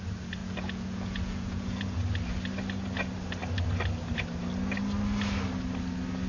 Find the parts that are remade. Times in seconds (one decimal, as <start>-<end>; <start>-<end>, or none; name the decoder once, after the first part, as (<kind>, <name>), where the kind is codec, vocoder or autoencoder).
0.4-2.0 (vocoder, Vocos)

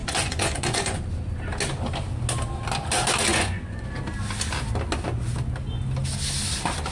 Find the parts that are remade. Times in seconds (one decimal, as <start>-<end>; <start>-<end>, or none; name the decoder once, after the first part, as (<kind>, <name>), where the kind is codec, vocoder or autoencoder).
0.0-1.0 (vocoder, Vocos); 3.3-3.9

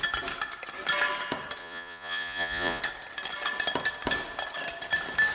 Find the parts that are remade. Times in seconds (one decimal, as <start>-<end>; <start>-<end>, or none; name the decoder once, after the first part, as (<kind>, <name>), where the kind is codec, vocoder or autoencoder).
1.6-2.8 (vocoder, Vocos)

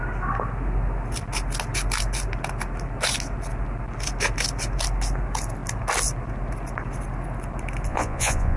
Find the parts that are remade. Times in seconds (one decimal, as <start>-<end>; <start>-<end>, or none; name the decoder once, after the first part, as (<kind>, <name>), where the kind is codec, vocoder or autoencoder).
7.9-8.6 (vocoder, Vocos)

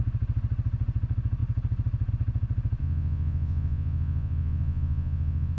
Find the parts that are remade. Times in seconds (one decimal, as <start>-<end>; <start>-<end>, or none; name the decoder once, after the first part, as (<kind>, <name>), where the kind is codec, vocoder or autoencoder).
2.8-5.6 (vocoder, Vocos)